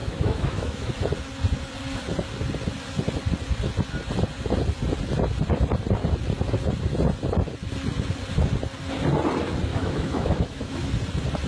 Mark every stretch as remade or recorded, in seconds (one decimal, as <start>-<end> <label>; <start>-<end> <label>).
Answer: 0.0-0.9 remade; 0.9-9.7 recorded; 9.7-10.9 remade; 10.9-11.5 recorded